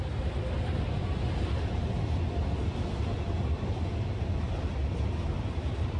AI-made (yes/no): no